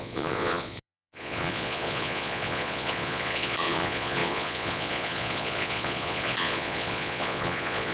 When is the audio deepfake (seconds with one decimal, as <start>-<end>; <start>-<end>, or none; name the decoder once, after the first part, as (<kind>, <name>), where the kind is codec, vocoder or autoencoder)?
0.0-7.9 (vocoder, Vocos)